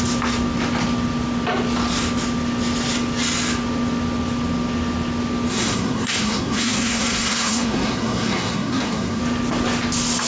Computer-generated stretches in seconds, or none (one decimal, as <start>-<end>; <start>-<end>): 5.5-9.2